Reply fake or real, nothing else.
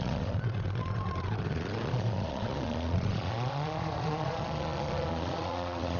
fake